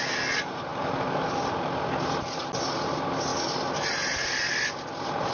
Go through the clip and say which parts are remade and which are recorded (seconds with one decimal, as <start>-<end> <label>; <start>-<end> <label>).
0.0-5.3 recorded